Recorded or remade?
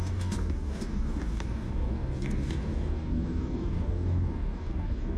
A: remade